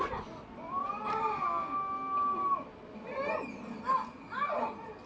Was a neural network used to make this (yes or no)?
no